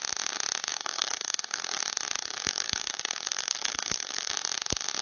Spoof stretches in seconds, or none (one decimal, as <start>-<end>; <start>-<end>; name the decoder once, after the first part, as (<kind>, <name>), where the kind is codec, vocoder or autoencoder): 0.7-1.8 (codec, SNAC); 2.2-4.3